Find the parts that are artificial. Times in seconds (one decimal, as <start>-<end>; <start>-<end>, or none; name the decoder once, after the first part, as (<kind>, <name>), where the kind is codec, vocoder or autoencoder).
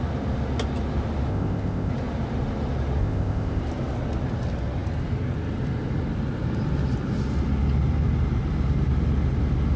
1.3-1.9 (codec, ZipCodec); 3.0-3.6